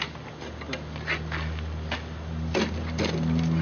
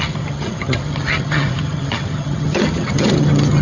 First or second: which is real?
first